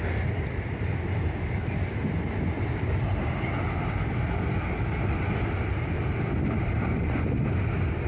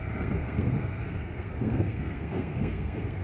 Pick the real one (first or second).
first